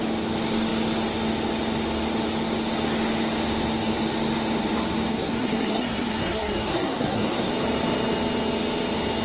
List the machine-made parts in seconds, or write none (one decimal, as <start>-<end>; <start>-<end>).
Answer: 5.1-7.5